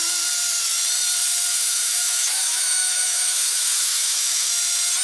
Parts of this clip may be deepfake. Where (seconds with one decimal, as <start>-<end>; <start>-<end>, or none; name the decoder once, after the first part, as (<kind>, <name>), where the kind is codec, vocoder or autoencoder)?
1.5-4.5 (autoencoder, DAC-VAE)